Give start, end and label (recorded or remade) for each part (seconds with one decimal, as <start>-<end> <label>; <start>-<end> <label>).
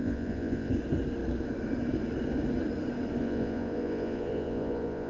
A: 0.0-0.7 remade; 0.7-3.2 recorded; 3.2-5.1 remade